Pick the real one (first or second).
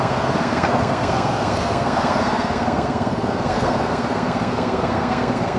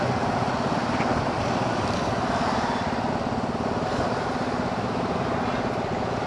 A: second